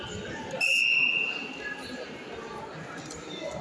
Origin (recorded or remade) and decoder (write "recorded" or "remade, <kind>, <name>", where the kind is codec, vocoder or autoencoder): recorded